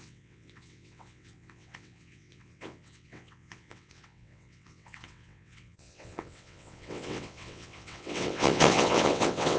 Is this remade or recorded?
remade